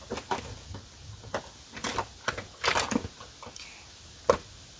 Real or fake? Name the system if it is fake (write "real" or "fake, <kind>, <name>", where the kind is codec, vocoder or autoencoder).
real